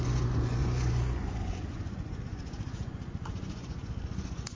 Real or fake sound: fake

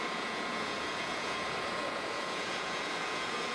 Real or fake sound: fake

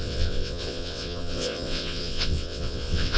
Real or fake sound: fake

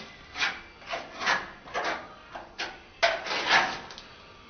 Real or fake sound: real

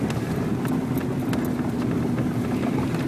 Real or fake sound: real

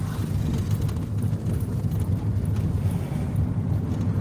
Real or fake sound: real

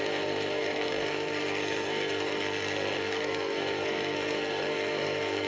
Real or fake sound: fake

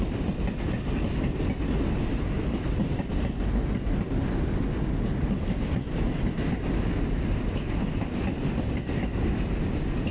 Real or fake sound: real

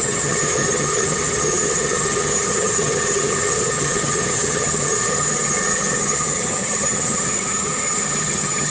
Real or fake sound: fake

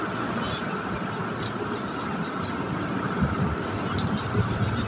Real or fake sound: real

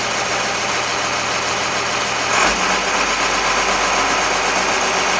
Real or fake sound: real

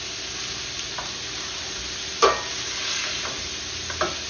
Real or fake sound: real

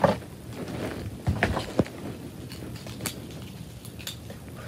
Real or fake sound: real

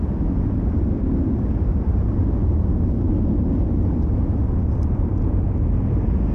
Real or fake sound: real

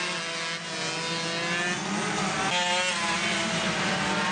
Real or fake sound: real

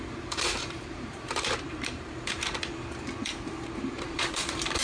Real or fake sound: fake